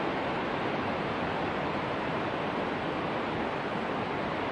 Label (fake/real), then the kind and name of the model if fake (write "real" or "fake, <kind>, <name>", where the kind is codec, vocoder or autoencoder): real